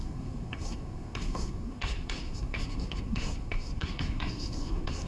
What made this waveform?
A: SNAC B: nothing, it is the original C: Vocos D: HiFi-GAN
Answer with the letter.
A